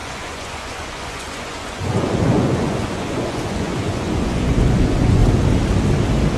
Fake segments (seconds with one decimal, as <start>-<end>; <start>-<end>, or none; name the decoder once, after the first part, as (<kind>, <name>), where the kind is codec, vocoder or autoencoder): 0.0-5.2 (vocoder, Vocos)